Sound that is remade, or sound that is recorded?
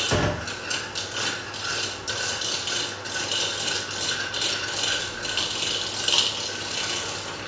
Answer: recorded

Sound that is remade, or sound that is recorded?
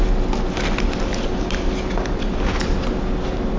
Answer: recorded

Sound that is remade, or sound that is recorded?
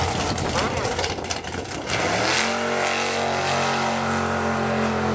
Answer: recorded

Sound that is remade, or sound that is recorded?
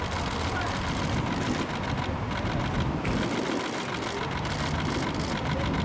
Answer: recorded